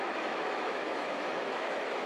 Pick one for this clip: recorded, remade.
remade